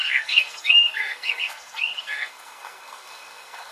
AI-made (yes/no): yes